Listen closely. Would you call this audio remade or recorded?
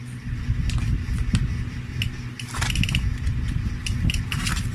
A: recorded